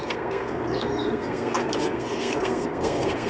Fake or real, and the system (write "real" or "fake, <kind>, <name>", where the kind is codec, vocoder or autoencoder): fake, codec, SNAC